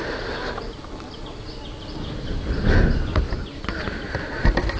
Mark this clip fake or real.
real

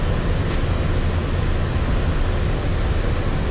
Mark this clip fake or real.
real